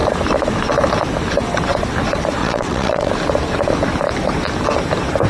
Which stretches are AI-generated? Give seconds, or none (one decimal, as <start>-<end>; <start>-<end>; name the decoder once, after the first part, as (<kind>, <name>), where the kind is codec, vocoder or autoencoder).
2.4-3.1 (vocoder, WaveNeXt)

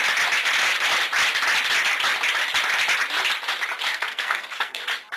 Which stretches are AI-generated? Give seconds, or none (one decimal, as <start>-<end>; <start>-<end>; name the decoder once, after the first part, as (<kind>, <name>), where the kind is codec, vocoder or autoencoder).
3.9-4.8 (codec, SNAC)